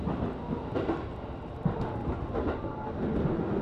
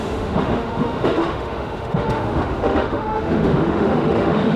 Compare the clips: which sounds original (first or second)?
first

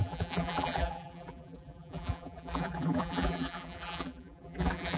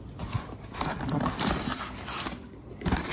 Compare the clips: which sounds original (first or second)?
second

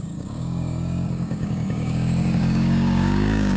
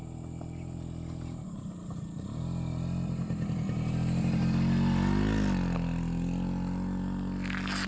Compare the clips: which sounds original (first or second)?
second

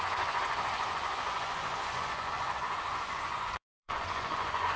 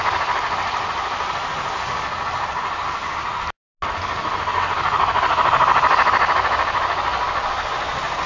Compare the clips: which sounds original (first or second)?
second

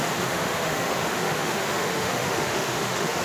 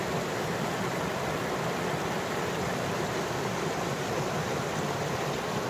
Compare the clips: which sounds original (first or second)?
second